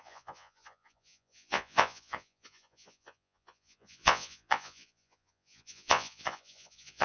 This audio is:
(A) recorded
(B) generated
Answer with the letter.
B